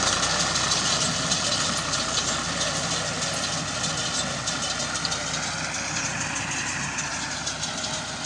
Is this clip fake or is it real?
real